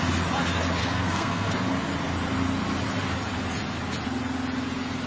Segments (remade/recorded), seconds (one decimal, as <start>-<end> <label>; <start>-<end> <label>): 0.0-0.8 recorded; 0.8-1.5 remade; 1.5-5.1 recorded